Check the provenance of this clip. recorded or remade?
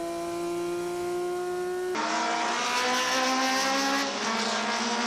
recorded